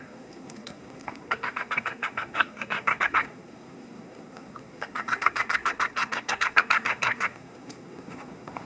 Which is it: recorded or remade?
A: remade